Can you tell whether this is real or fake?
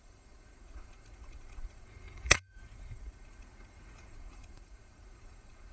fake